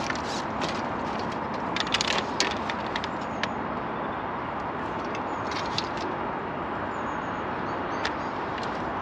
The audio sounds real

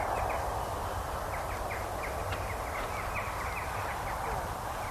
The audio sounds real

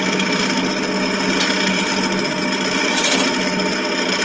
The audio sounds real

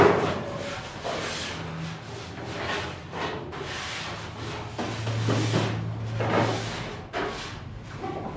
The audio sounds real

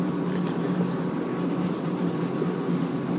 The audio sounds real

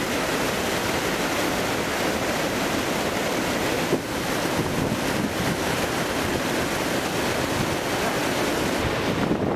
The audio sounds real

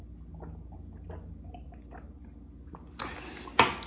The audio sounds real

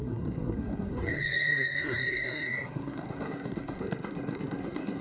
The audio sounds fake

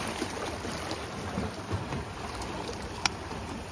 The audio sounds real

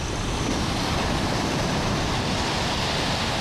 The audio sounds real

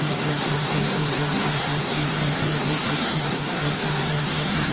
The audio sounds fake